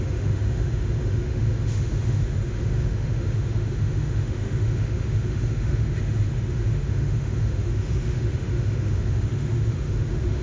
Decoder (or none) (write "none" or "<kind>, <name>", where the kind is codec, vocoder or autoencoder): autoencoder, DAC-VAE